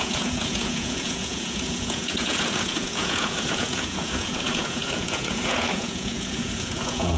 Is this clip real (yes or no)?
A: no